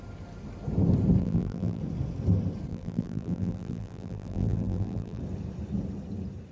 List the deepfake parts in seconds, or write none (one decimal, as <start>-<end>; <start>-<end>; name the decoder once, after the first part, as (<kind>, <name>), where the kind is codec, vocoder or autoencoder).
1.2-1.8 (vocoder, BigVGAN v2); 2.7-5.2